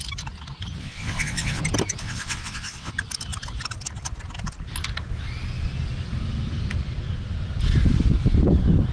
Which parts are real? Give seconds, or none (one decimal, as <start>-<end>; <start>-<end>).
0.0-0.8; 1.6-2.0; 2.9-8.9

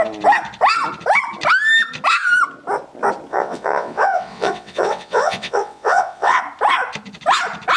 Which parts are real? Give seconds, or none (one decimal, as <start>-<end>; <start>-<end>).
0.0-3.3; 6.4-7.8

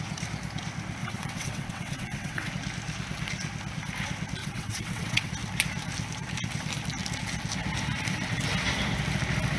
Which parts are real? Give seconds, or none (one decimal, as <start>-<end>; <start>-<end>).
0.0-1.0; 2.5-4.4; 5.3-9.6